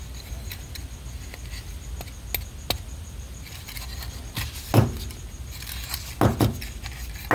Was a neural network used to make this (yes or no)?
no